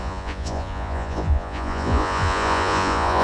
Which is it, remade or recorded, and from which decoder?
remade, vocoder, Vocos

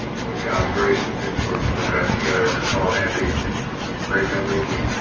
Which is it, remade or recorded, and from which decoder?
recorded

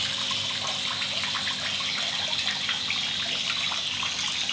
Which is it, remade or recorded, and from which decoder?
recorded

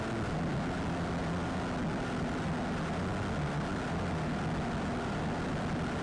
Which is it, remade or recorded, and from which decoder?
recorded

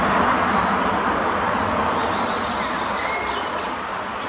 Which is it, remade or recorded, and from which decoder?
recorded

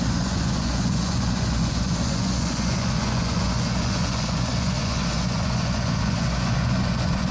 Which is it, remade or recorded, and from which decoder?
remade, vocoder, Vocos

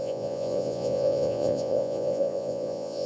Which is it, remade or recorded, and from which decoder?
remade, vocoder, Vocos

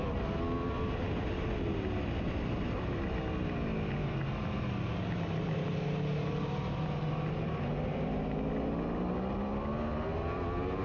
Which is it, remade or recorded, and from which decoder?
recorded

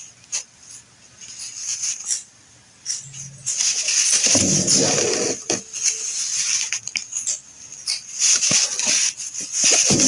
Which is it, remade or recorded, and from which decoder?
recorded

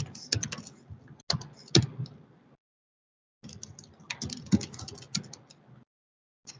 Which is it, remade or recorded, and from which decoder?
recorded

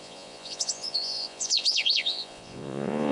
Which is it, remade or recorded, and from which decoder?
remade, vocoder, Vocos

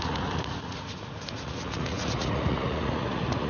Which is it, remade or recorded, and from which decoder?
remade, vocoder, Vocos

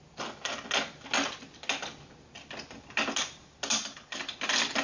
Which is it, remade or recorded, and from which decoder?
recorded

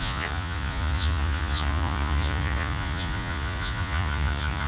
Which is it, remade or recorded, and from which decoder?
remade, vocoder, Vocos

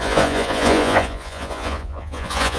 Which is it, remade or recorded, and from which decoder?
remade, vocoder, Vocos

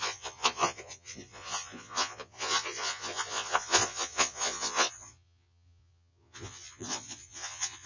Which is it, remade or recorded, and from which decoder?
remade, vocoder, Vocos